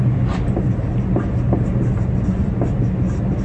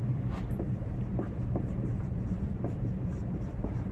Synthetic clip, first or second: second